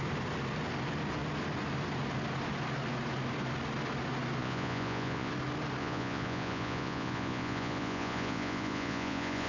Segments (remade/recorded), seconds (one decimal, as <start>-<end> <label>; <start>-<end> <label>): 0.0-4.4 recorded; 4.4-5.3 remade; 5.3-5.8 recorded; 5.8-9.5 remade